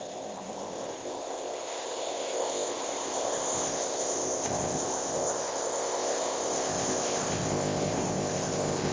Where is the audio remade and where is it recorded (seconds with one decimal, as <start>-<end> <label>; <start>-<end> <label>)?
0.0-8.9 remade